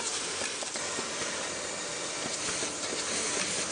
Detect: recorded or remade recorded